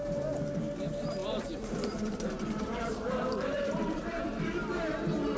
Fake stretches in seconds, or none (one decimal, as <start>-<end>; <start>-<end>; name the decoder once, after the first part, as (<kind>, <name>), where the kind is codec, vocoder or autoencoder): 1.2-4.4 (vocoder, BigVGAN v2)